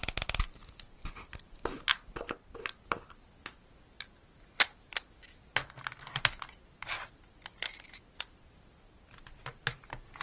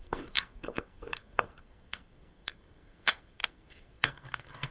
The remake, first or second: second